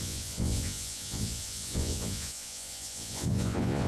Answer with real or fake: fake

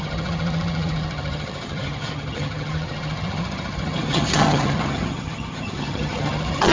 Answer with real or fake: fake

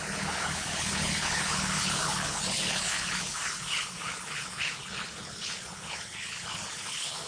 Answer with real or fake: fake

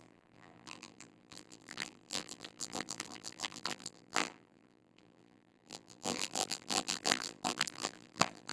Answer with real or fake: fake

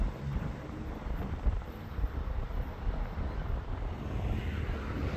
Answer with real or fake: fake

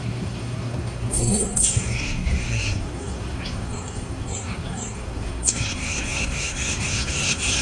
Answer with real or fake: fake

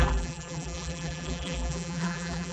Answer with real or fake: fake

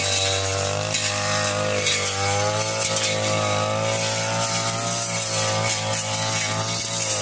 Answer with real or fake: real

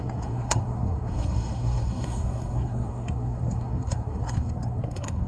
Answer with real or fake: fake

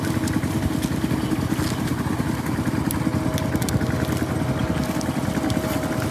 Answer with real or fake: real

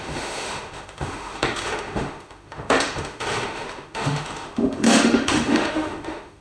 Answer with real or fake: fake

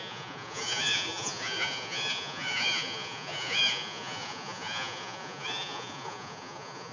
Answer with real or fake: fake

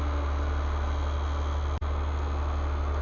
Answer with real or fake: real